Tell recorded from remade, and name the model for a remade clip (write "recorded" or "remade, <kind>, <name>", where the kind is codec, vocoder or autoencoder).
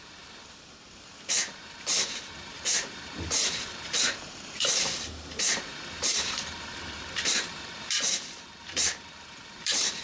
remade, vocoder, BigVGAN v2